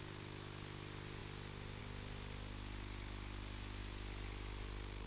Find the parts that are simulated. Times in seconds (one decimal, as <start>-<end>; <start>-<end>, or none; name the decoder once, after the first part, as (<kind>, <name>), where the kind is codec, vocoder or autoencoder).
none